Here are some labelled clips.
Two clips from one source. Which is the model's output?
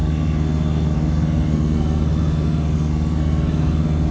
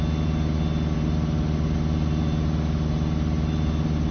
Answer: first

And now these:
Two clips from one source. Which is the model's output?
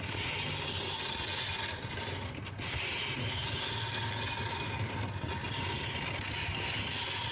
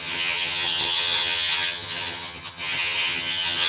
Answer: second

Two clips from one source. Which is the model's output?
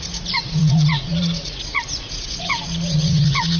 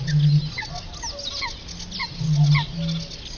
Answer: first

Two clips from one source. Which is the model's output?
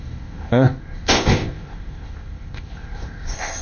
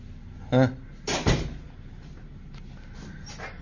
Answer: first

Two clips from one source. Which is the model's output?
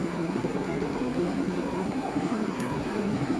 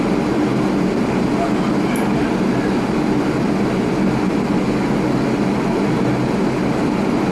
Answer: first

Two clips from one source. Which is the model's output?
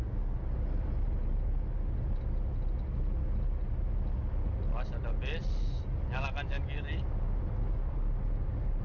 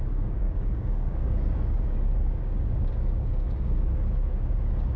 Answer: second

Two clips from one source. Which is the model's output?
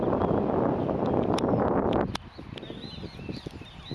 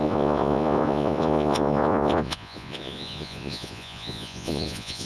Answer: second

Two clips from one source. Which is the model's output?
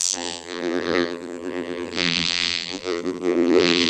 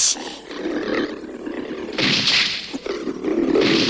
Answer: first